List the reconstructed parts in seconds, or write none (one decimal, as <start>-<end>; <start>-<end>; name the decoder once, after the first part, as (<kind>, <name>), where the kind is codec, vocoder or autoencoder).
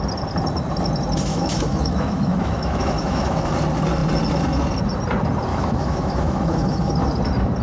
1.3-3.6 (autoencoder, DAC-VAE); 5.5-6.9